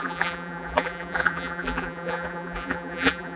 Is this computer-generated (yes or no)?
yes